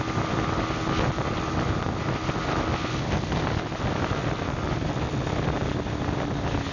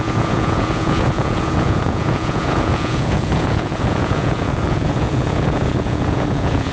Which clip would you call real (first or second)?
first